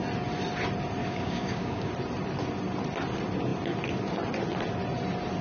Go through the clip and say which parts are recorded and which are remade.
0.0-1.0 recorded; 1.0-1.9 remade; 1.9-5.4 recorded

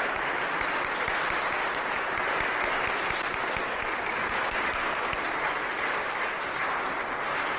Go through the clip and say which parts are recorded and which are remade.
0.0-3.7 recorded; 3.7-5.1 remade; 5.1-7.6 recorded